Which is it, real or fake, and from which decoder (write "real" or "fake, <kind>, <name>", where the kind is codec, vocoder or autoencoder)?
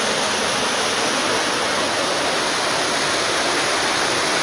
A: real